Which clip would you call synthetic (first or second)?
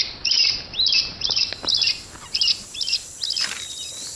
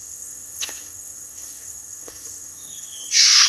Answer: second